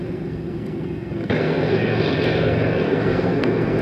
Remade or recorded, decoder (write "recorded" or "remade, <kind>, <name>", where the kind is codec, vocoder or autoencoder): remade, codec, SNAC